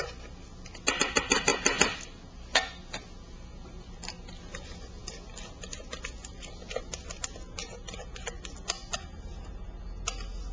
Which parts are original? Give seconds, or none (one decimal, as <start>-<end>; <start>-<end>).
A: 0.0-10.5